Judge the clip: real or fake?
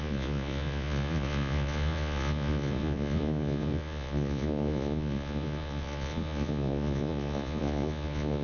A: fake